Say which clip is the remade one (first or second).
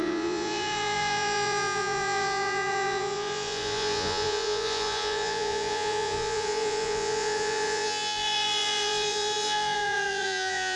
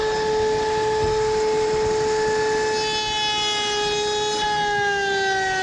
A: first